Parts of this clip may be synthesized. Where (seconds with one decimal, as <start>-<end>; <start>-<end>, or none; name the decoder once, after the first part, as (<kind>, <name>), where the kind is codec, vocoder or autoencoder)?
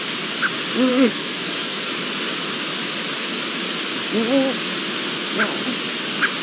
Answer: 0.9-1.9 (codec, SNAC)